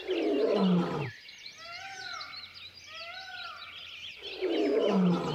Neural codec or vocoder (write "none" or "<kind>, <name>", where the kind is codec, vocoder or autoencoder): none